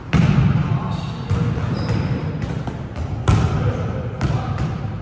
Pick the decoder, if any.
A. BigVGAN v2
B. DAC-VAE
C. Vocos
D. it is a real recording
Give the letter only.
D